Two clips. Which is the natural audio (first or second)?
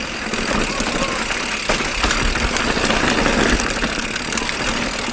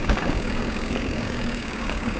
first